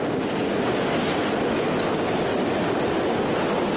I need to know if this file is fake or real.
real